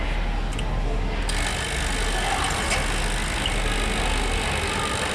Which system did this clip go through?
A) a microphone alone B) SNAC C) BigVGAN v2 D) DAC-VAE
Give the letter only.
A